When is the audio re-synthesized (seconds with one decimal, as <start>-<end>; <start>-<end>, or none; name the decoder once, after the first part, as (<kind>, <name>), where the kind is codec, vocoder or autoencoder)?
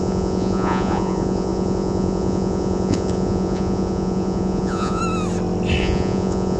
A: 0.0-5.0 (vocoder, Vocos); 5.8-6.6